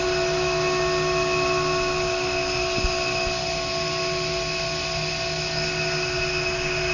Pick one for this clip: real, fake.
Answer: real